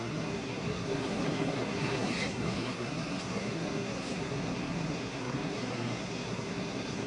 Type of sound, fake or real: fake